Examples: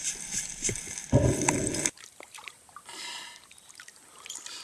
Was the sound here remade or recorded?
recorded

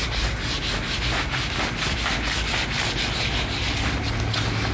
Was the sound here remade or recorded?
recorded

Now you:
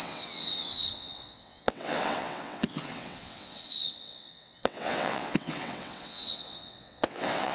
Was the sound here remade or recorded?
remade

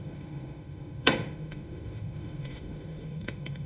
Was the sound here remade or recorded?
remade